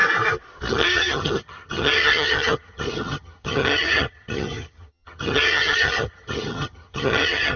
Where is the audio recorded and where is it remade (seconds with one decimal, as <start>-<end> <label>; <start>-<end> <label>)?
0.0-0.7 recorded; 0.7-7.6 remade